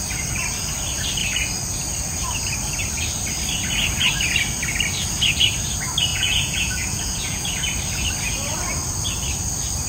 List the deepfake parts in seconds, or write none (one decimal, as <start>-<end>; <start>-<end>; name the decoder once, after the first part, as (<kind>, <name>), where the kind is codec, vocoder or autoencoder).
6.1-7.5 (vocoder, Vocos)